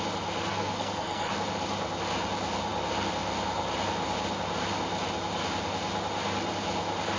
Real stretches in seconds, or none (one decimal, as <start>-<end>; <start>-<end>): 0.0-0.5; 1.3-7.2